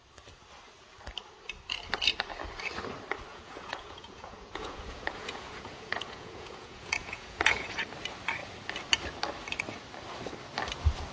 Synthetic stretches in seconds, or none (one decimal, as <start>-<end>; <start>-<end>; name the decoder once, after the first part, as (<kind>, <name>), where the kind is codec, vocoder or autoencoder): 3.3-7.8 (vocoder, Vocos)